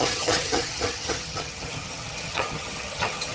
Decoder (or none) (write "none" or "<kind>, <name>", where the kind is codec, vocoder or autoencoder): vocoder, HiFi-GAN